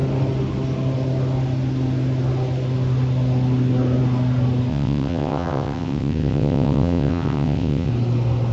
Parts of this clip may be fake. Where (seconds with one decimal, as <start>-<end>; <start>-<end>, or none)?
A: 4.7-7.9